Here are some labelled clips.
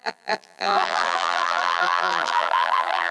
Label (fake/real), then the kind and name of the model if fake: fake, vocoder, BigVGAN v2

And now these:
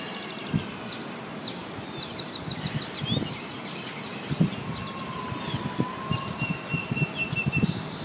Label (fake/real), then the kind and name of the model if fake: real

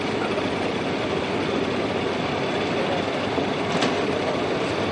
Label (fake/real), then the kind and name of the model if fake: real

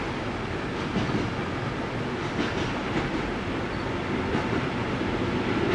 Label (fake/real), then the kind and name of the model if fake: real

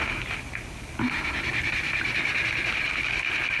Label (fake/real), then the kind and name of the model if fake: real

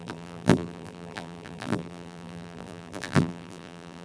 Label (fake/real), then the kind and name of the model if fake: fake, vocoder, BigVGAN v2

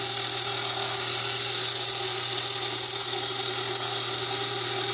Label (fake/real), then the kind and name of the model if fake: real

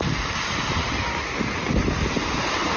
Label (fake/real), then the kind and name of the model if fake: real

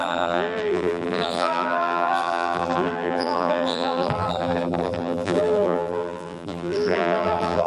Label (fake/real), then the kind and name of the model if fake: fake, vocoder, BigVGAN v2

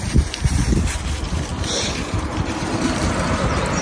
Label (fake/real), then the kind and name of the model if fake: fake, vocoder, BigVGAN v2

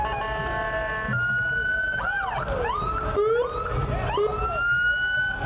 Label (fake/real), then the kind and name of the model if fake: real